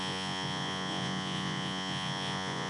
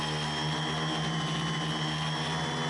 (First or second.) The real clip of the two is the second